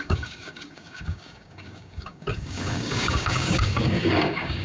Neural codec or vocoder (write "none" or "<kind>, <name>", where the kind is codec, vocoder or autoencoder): codec, DAC